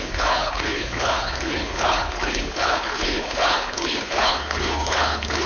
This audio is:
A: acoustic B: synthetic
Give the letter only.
B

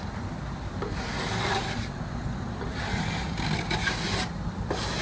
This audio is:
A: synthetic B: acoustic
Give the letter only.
B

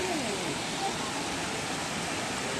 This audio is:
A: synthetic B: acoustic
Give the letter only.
B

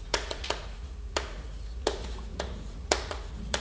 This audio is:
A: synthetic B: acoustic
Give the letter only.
A